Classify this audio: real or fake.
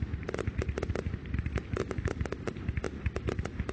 real